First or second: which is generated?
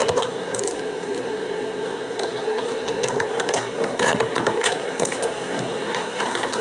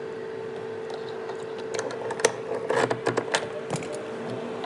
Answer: first